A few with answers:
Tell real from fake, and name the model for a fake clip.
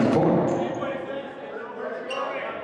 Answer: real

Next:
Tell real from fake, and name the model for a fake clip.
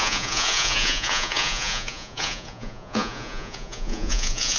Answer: fake, vocoder, Vocos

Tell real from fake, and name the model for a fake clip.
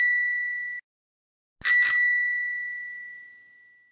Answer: real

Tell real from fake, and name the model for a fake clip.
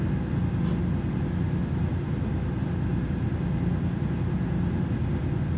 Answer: real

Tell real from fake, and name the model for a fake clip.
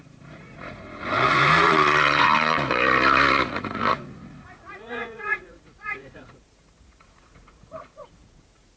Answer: fake, vocoder, Vocos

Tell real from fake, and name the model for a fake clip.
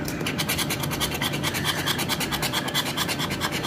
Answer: real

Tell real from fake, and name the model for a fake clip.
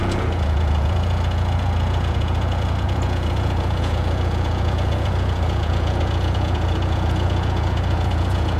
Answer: fake, vocoder, Vocos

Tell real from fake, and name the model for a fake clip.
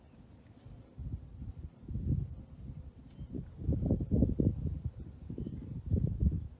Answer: real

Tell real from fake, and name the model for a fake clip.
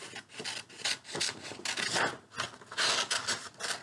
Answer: real